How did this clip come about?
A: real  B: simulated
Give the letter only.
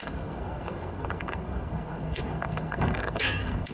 B